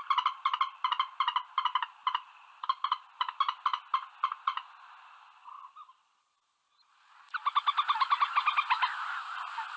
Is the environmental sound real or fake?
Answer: real